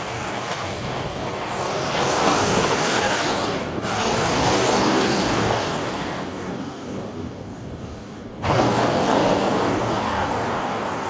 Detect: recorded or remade remade